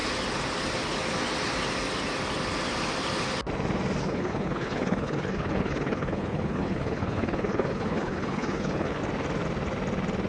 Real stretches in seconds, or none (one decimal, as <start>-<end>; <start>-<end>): 0.0-4.0; 9.0-10.3